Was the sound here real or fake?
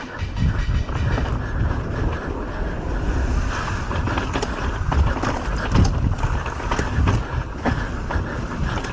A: real